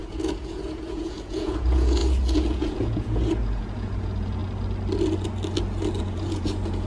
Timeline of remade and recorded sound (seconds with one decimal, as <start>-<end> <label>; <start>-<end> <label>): 0.0-4.4 remade; 4.4-6.0 recorded; 6.0-6.9 remade